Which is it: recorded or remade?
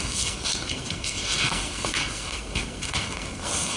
remade